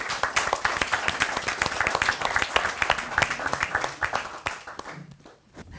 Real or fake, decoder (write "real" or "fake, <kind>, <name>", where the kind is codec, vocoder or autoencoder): real